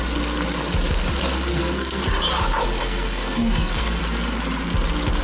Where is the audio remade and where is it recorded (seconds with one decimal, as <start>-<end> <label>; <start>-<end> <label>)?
0.0-1.5 recorded; 1.5-2.0 remade; 2.0-2.8 recorded; 2.8-4.0 remade; 4.0-5.2 recorded